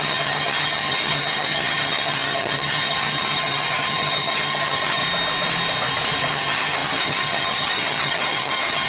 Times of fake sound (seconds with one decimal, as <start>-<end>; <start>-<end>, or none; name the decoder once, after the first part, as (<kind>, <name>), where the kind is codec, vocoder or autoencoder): 0.0-5.0 (vocoder, HiFi-GAN); 6.3-8.9